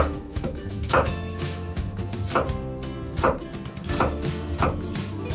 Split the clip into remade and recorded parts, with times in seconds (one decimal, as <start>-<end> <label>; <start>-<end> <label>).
0.0-2.0 remade; 2.0-5.3 recorded